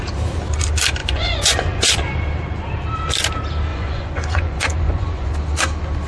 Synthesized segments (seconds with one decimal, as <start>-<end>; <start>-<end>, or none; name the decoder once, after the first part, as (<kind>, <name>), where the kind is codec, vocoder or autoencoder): 1.0-1.9 (vocoder, Vocos); 3.7-5.3